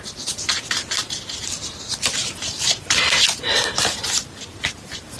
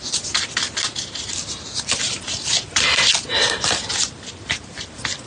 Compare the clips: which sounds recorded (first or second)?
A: second